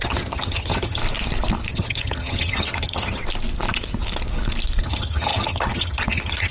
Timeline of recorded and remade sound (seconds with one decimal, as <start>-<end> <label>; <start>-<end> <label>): 0.0-1.0 remade; 1.0-1.7 recorded; 1.7-3.2 remade; 3.2-4.8 recorded; 4.8-6.5 remade